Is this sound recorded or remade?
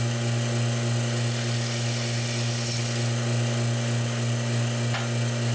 recorded